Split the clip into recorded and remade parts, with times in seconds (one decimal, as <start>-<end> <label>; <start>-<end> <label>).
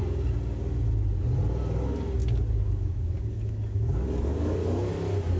0.0-2.2 recorded; 2.2-4.9 remade; 4.9-5.4 recorded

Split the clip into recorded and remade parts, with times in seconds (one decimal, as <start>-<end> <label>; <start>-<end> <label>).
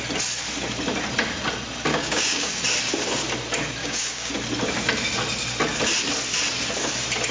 0.0-1.9 recorded; 1.9-2.5 remade; 2.5-3.8 recorded; 3.8-4.3 remade; 4.3-7.3 recorded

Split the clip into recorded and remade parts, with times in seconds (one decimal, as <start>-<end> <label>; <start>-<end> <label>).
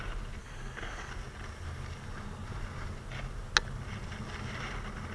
0.0-0.4 recorded; 0.4-1.1 remade; 1.1-5.1 recorded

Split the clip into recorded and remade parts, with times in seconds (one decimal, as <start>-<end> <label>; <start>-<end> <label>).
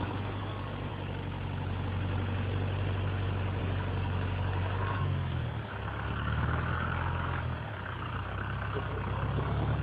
0.0-0.9 remade; 0.9-3.6 recorded; 3.6-9.8 remade